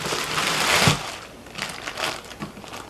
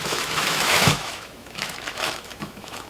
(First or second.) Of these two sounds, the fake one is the second